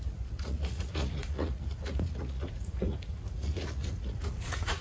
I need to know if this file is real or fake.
fake